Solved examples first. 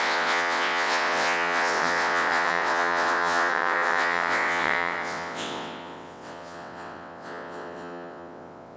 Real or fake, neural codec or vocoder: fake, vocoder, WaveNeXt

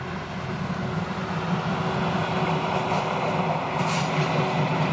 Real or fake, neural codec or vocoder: real